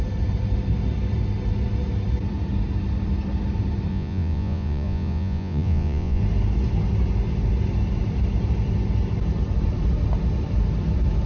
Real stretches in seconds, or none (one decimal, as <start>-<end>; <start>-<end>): 0.0-3.9; 6.2-11.3